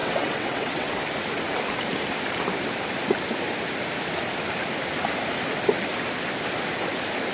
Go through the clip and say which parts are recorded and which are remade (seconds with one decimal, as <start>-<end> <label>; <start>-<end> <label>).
0.0-0.9 remade; 0.9-7.3 recorded